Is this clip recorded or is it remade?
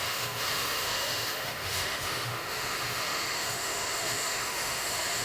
remade